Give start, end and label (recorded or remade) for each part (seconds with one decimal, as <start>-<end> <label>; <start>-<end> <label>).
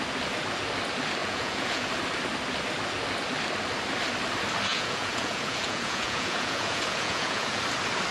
0.0-1.2 recorded; 1.2-1.9 remade; 1.9-4.7 recorded; 4.7-7.6 remade; 7.6-8.1 recorded